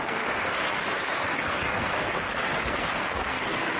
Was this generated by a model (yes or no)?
yes